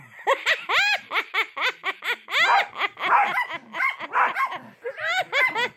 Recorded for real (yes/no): yes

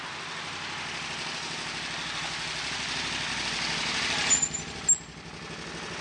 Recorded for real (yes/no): yes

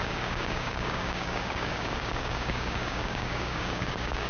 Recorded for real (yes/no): no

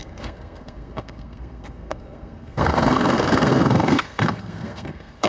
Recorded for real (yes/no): no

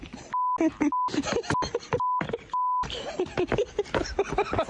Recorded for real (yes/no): yes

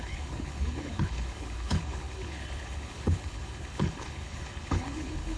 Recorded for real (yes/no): no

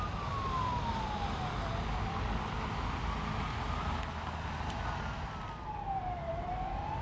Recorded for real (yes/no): yes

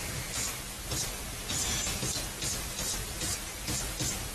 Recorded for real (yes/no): yes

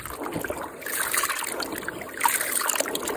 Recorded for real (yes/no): yes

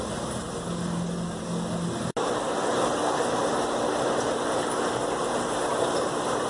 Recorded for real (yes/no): yes